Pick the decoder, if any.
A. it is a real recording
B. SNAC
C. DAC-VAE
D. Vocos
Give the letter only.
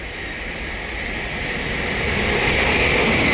A